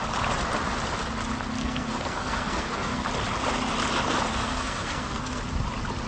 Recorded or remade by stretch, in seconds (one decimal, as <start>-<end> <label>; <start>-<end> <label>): 0.0-1.6 recorded; 1.6-3.1 remade; 3.1-4.3 recorded; 4.3-5.4 remade; 5.4-6.1 recorded